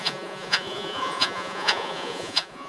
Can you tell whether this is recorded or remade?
remade